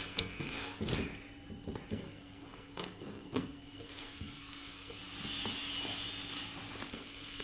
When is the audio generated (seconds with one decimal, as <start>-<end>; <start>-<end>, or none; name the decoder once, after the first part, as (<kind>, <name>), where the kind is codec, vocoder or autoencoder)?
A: 0.0-0.9 (codec, SNAC); 1.9-5.0; 6.9-7.4